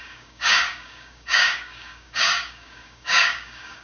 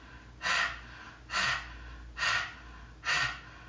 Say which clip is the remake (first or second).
first